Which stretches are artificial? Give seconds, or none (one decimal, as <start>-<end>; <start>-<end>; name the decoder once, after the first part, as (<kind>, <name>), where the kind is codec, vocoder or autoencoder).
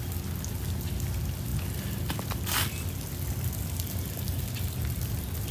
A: none